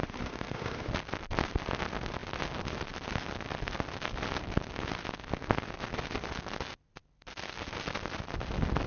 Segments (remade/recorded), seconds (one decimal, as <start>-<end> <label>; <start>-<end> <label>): 0.0-0.9 remade; 0.9-8.9 recorded

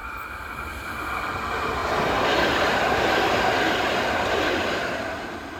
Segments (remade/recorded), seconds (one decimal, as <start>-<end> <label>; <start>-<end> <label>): 0.0-0.7 recorded; 0.7-1.8 remade; 1.8-5.0 recorded; 5.0-5.6 remade

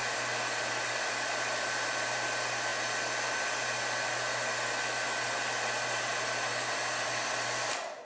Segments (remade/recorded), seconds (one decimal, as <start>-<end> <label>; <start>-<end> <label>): 0.0-8.0 recorded

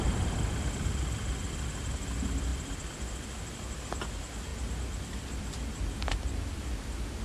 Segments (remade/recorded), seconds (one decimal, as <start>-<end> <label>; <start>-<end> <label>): 0.0-4.5 recorded; 4.5-6.6 remade; 6.6-7.2 recorded

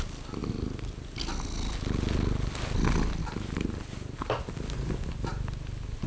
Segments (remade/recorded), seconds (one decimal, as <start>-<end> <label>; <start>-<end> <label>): 0.0-6.1 recorded

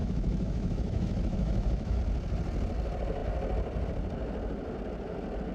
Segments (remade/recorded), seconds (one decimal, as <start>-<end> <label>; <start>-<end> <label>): 0.0-2.0 remade; 2.0-5.5 recorded